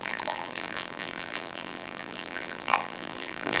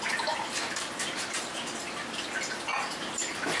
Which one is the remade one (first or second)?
first